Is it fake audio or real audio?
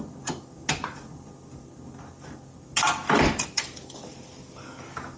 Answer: real